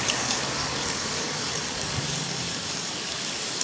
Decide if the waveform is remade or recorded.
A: remade